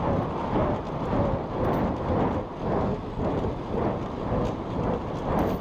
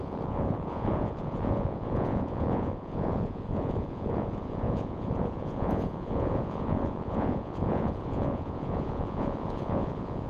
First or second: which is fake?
second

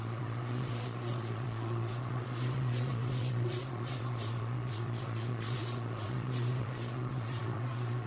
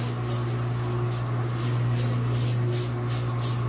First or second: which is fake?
first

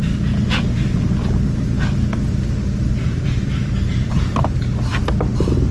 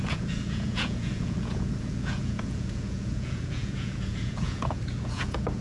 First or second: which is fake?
second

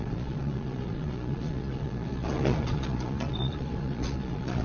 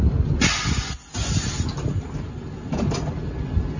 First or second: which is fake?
first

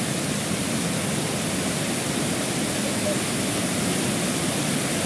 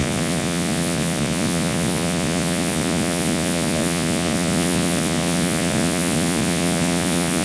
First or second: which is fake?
second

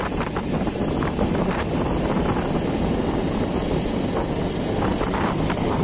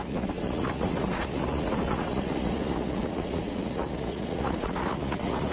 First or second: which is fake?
second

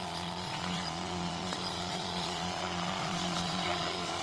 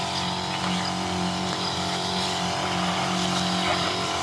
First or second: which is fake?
first